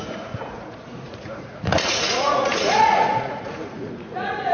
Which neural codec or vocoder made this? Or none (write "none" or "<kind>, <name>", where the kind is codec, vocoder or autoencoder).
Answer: vocoder, Vocos